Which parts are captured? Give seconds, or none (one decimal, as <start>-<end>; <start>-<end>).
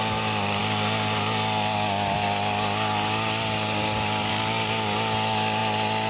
0.0-6.1